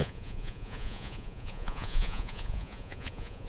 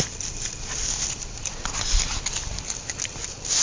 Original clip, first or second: second